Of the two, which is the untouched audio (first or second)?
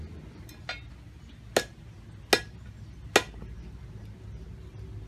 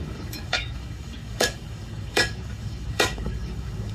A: first